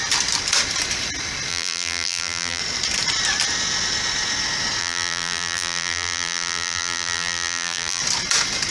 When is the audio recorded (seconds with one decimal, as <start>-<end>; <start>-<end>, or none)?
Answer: 0.0-1.5; 2.6-4.8; 8.0-8.7